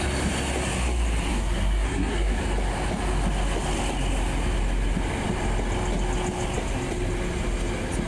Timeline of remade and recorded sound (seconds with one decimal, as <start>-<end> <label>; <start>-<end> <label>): 0.0-1.3 recorded; 1.3-2.4 remade; 2.4-8.1 recorded